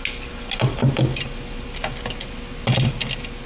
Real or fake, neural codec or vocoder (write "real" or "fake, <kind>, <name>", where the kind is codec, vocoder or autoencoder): real